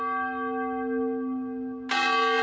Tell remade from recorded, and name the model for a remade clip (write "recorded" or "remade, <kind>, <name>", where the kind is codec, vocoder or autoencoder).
recorded